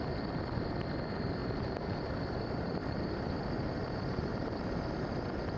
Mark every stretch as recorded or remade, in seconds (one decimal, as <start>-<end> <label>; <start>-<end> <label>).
0.0-1.4 recorded; 1.4-4.8 remade; 4.8-5.6 recorded